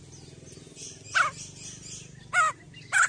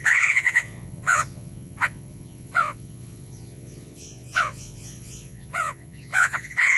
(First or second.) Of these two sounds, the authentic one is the first